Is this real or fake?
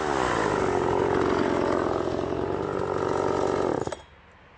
real